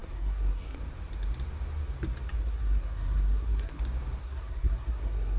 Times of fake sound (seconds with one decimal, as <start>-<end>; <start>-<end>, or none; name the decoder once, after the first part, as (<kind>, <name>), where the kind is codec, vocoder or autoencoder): 0.0-0.8 (codec, SNAC); 2.4-3.8; 4.2-5.4